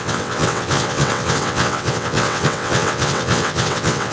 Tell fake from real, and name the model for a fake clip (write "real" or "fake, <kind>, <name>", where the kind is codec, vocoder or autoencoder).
fake, vocoder, WaveNeXt